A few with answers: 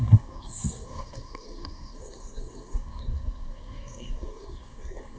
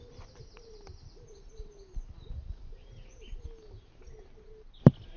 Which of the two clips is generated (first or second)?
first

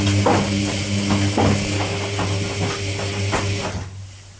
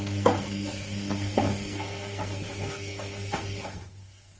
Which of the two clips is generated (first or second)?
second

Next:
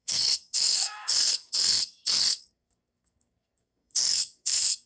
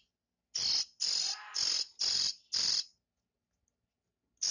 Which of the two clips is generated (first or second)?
first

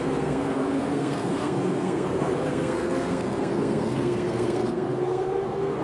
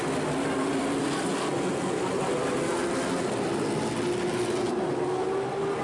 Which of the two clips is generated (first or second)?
first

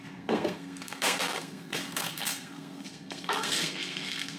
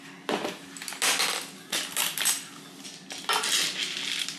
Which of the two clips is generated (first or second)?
first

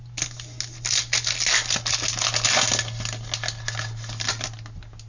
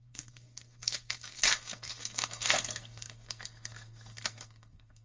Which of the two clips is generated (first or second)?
second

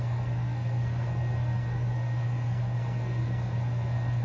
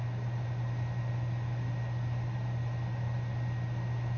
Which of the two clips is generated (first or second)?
first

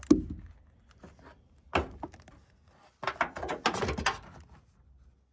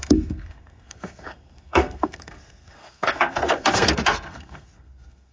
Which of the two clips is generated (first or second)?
second